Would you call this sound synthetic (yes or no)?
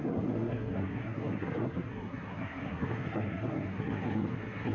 yes